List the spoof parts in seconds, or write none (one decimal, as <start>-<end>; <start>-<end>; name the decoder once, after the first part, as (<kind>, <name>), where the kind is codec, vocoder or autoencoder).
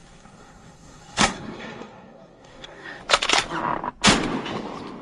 0.0-3.0 (codec, SNAC)